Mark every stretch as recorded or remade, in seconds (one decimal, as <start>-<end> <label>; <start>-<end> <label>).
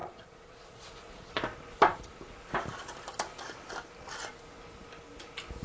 0.0-1.3 remade; 1.3-5.6 recorded